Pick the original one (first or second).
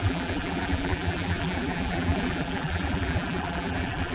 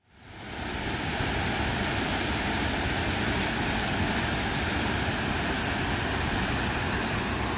second